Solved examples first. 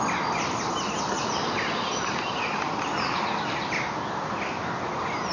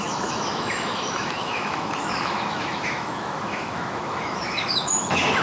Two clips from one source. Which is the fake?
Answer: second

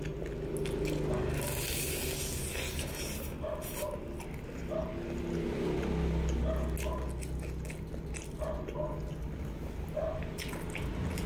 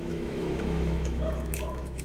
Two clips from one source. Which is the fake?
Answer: second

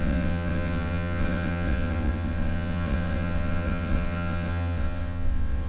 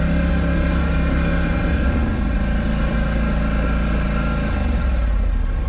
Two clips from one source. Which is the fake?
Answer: first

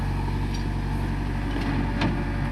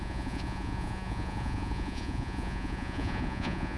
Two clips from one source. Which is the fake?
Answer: second